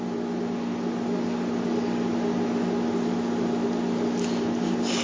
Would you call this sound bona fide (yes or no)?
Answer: yes